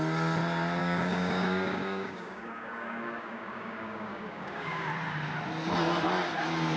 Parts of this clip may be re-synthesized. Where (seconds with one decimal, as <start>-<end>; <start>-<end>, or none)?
0.8-4.9

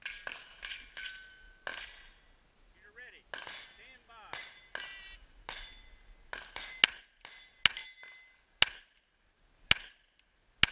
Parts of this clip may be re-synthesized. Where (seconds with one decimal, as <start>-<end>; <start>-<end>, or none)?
none

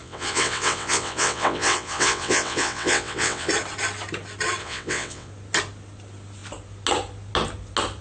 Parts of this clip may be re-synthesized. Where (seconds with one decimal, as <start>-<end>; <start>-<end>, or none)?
0.0-3.5; 4.6-5.3